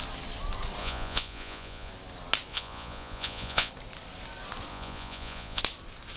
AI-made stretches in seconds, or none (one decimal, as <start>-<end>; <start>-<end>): 0.8-1.9; 2.5-3.7; 4.7-5.6